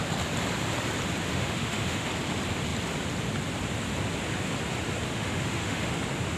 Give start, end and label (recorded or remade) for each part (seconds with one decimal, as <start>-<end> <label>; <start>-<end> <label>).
0.0-1.3 recorded; 1.3-2.1 remade; 2.1-5.1 recorded; 5.1-5.9 remade; 5.9-6.4 recorded